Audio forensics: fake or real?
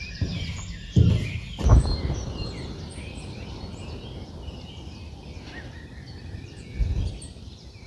real